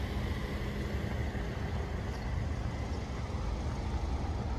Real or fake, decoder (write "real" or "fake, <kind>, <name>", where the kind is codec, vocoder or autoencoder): real